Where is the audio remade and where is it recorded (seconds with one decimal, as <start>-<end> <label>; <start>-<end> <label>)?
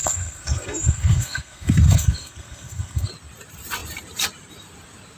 0.0-3.1 remade; 3.1-5.2 recorded